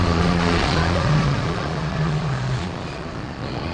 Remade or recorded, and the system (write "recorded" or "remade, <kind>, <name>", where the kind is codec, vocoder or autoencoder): remade, vocoder, Vocos